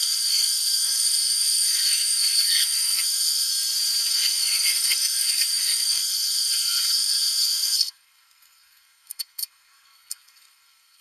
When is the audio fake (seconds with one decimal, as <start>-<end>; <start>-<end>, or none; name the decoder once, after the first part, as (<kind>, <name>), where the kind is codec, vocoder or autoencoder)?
0.0-3.5 (codec, SNAC); 4.1-11.0